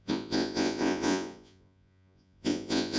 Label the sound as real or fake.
fake